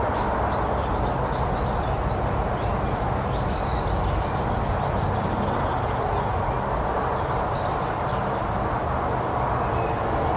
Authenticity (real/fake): real